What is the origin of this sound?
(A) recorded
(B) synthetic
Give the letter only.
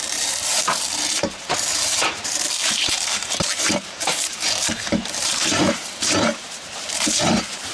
B